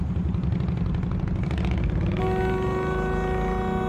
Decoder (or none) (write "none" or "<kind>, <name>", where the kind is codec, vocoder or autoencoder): none